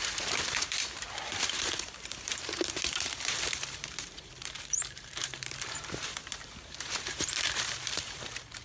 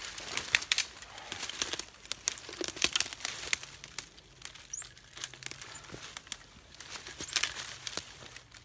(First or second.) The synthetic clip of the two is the first